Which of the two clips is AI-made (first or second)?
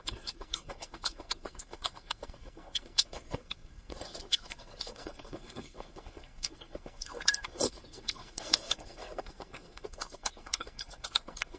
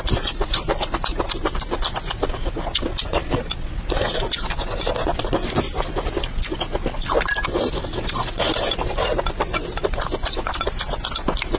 first